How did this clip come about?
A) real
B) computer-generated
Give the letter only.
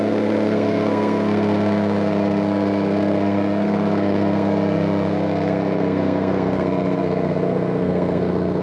B